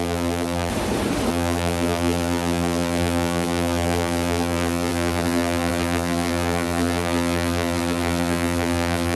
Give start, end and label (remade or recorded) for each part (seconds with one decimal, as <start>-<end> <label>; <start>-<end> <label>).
0.0-0.7 remade; 0.7-1.3 recorded; 1.3-9.2 remade